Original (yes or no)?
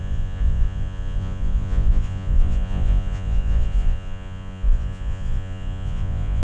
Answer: no